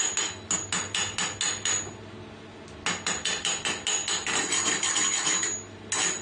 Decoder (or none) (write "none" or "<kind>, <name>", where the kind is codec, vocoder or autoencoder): none